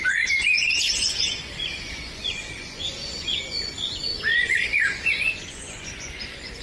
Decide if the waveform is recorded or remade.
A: remade